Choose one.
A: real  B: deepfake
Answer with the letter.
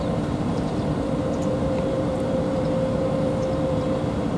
B